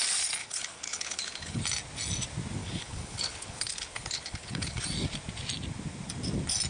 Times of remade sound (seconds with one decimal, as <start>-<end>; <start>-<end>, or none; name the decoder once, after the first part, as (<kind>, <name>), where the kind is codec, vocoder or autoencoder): 0.4-1.6 (codec, HILCodec); 2.6-4.8